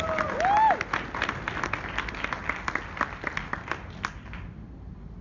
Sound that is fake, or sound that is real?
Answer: real